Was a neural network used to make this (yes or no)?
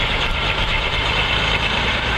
yes